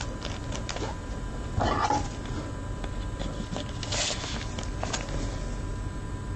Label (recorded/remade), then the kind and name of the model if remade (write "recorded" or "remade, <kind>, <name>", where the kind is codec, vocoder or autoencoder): recorded